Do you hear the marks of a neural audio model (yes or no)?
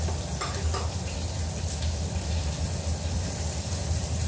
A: no